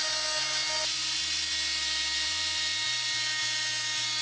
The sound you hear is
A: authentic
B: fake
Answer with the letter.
A